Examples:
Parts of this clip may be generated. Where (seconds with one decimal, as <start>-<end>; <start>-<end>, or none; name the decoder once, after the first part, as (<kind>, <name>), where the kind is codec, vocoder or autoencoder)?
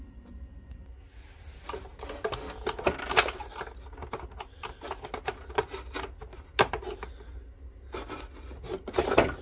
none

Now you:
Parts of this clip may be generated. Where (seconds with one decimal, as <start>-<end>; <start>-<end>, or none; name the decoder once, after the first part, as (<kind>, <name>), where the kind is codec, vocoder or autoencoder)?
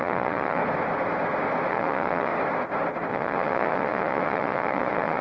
0.0-0.6 (vocoder, Vocos); 1.7-2.3; 3.1-5.2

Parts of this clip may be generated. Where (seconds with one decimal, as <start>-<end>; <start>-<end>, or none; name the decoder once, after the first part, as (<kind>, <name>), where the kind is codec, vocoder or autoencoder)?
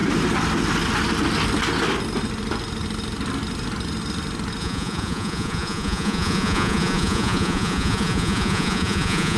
4.6-9.4 (vocoder, Vocos)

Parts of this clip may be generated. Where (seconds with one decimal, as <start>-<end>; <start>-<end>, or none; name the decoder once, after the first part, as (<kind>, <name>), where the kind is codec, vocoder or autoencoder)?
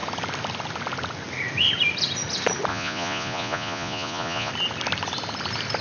2.7-4.5 (vocoder, Vocos)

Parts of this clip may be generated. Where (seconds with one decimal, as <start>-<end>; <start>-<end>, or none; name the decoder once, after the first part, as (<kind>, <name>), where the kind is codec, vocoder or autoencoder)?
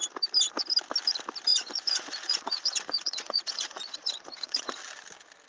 1.5-4.8 (vocoder, Vocos)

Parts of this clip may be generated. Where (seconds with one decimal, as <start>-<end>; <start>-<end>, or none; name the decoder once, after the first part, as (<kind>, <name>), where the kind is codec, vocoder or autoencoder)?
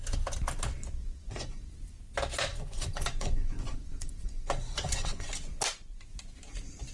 1.0-1.7 (vocoder, Vocos); 2.5-5.3